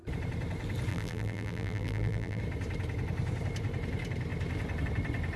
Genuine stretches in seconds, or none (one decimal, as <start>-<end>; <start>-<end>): 0.0-0.9; 2.4-5.4

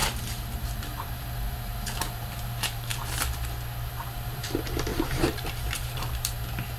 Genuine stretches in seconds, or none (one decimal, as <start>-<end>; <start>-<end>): 2.9-3.9